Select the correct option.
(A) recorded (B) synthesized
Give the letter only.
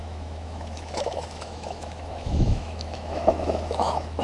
B